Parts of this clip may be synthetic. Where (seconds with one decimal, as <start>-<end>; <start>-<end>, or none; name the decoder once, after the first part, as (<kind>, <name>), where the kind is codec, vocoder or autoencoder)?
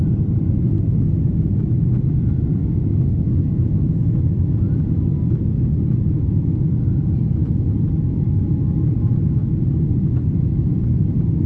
2.6-4.6 (autoencoder, DAC-VAE)